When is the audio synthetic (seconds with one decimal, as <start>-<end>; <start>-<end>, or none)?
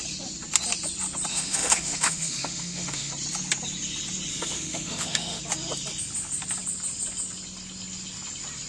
1.3-3.1; 4.3-5.4